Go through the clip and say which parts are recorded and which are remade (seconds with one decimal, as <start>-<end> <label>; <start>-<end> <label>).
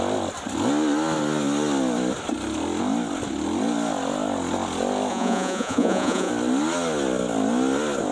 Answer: 0.0-5.1 recorded; 5.1-6.3 remade; 6.3-8.1 recorded